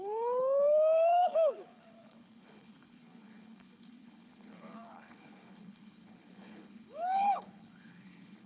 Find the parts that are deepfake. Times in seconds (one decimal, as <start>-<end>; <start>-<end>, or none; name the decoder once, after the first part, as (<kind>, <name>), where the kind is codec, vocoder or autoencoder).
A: 0.0-8.5 (codec, HILCodec)